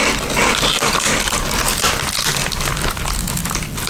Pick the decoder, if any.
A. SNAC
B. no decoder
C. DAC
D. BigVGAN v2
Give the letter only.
B